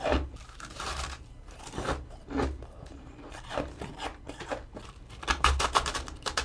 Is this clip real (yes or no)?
no